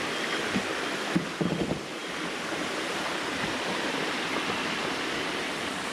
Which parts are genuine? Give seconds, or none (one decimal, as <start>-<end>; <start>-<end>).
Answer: 0.0-5.9

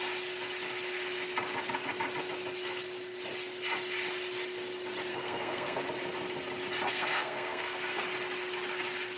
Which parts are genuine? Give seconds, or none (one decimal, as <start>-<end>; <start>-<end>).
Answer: 0.0-5.1; 5.8-6.9; 8.0-9.2

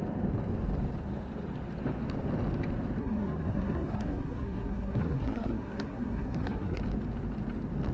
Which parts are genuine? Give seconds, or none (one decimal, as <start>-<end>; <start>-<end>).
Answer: 0.0-3.0; 6.8-7.9